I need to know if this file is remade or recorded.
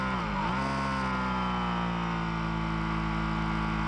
recorded